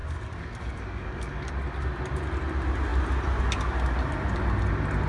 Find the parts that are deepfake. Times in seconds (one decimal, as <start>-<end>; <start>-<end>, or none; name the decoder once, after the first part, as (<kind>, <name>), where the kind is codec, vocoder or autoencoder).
0.0-1.5 (codec, DAC)